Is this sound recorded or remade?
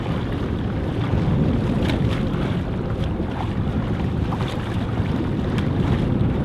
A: remade